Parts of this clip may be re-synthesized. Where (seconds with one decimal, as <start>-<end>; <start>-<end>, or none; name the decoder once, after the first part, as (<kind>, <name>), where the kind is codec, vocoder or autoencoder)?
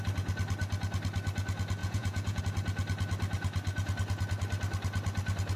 1.8-2.4 (vocoder, Vocos)